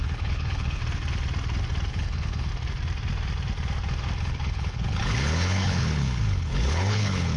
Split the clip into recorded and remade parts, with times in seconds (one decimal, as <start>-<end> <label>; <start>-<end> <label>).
0.0-0.8 remade; 0.8-1.9 recorded; 1.9-2.5 remade; 2.5-4.2 recorded; 4.2-7.4 remade